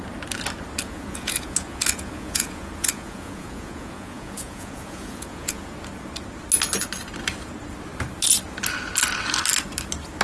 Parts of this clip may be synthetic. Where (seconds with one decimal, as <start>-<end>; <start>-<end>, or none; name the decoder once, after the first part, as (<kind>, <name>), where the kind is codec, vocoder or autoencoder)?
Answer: 0.8-5.7 (vocoder, Vocos)